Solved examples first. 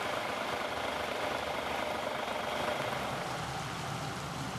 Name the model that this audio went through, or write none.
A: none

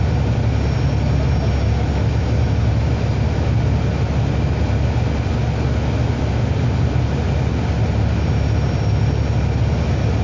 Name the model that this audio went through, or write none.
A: none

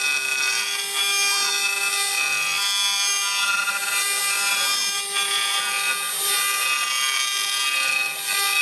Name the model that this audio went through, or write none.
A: none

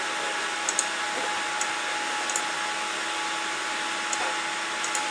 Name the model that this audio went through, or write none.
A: none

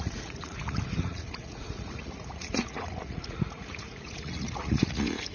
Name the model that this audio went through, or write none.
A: vocoder, Vocos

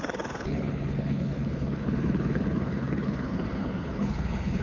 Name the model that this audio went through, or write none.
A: codec, HILCodec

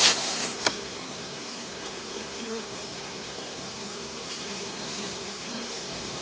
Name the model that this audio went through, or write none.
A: codec, SNAC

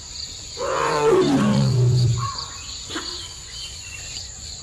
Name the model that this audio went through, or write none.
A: vocoder, Vocos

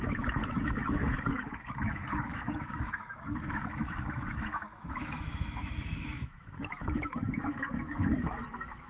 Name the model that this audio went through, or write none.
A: autoencoder, DAC-VAE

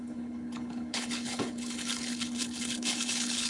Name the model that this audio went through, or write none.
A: codec, HILCodec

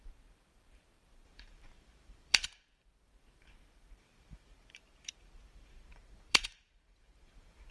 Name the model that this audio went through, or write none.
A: vocoder, BigVGAN v2